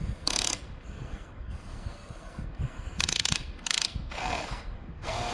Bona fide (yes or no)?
no